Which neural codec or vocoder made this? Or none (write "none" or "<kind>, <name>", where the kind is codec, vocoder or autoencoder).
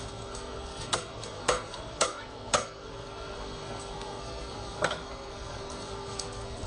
codec, SNAC